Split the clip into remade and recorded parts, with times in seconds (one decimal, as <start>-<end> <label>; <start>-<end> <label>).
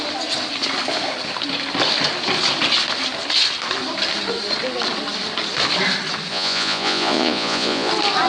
0.0-6.3 recorded; 6.3-7.9 remade; 7.9-8.3 recorded